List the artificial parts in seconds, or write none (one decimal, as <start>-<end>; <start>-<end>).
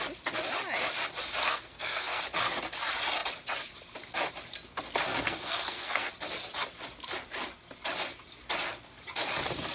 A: 1.4-2.2; 5.1-6.1